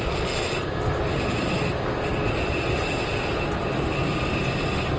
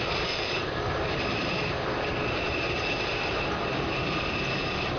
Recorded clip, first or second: first